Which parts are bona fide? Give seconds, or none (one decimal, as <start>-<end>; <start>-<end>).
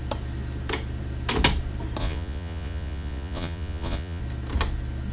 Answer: 0.0-2.0; 4.2-5.1